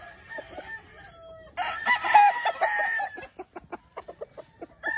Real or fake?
real